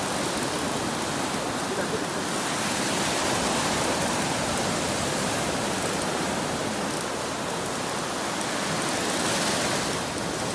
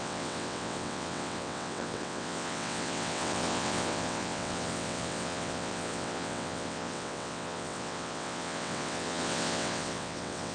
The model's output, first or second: second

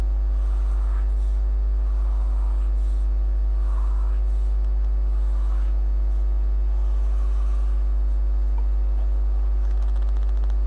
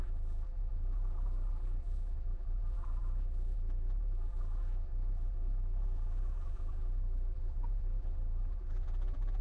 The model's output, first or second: second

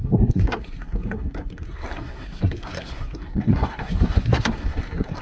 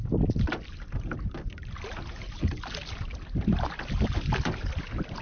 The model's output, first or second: first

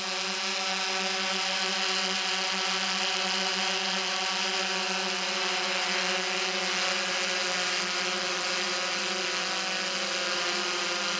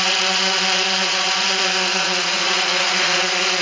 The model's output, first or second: second